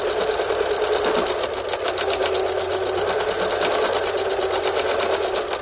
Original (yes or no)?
yes